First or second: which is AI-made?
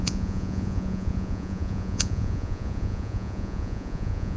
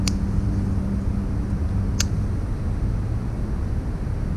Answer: first